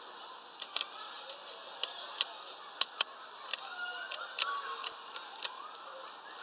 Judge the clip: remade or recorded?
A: recorded